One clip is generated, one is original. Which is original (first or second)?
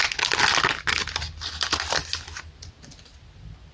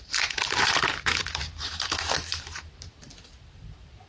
first